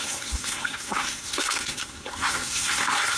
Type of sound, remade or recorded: remade